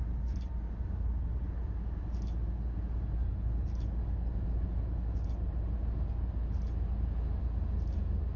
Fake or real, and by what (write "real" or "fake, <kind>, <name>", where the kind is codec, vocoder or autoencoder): real